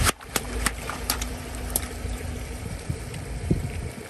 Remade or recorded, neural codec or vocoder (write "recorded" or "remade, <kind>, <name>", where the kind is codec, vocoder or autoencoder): remade, vocoder, BigVGAN v2